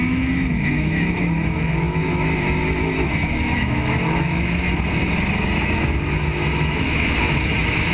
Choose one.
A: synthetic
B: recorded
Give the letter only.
A